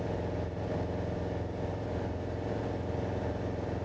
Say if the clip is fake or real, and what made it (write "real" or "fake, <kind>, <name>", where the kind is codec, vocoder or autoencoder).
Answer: real